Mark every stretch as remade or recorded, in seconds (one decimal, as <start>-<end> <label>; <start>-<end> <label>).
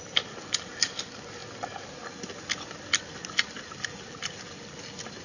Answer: 0.0-5.2 recorded